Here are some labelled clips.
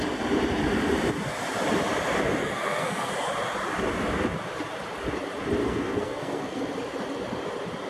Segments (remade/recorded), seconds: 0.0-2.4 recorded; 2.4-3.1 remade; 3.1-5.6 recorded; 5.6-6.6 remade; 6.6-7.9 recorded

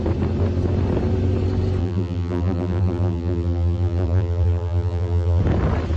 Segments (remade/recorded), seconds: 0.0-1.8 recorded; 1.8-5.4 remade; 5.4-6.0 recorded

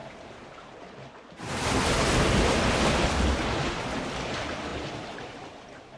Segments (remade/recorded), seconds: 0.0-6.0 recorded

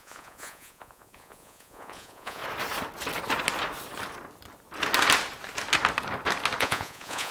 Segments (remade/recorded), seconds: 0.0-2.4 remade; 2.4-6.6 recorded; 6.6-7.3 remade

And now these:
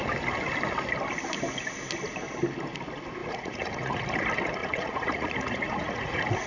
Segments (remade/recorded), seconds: 0.0-3.2 recorded; 3.2-4.0 remade; 4.0-4.6 recorded; 4.6-6.5 remade

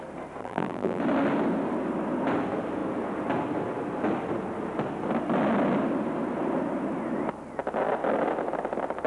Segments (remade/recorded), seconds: 0.0-0.4 recorded; 0.4-1.0 remade; 1.0-9.1 recorded

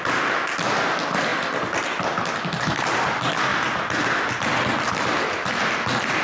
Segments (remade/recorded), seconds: 0.0-6.2 recorded

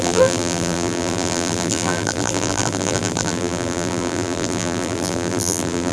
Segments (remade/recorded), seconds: 0.0-5.9 remade